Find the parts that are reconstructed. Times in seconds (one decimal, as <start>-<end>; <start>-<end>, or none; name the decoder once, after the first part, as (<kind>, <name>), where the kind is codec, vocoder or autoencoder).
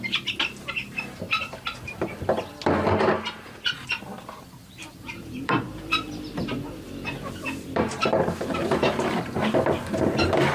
4.6-9.2 (vocoder, BigVGAN v2)